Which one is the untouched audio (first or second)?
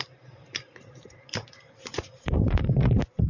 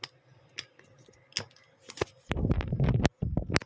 second